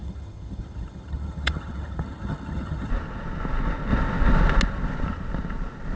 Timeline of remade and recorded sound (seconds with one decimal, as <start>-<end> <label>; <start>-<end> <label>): 0.0-2.9 remade; 2.9-6.0 recorded